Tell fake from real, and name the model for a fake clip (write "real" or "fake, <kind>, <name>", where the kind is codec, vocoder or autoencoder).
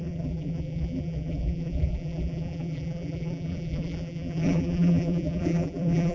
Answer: fake, vocoder, BigVGAN v2